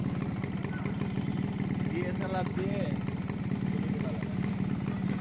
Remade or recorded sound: recorded